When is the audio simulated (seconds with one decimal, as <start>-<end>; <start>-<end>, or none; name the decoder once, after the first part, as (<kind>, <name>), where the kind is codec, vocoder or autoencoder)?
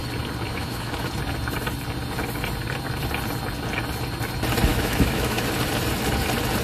0.5-1.1 (autoencoder, DAC-VAE); 4.7-5.4